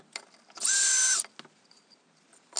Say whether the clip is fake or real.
real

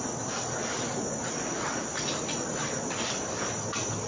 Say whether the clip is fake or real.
real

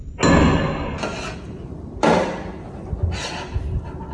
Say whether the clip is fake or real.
real